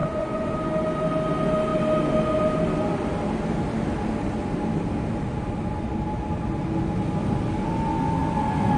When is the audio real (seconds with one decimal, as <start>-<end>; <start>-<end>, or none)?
0.5-8.8

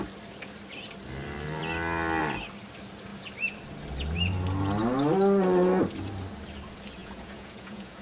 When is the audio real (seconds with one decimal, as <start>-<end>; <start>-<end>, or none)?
0.0-7.0

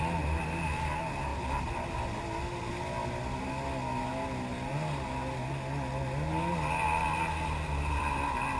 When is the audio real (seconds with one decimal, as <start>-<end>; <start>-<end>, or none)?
0.0-8.6

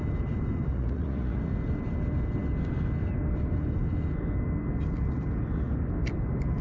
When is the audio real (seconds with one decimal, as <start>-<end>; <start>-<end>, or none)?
0.0-0.7; 1.4-6.6

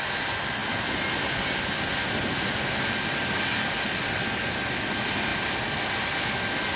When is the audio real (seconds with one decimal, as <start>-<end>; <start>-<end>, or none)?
0.0-6.8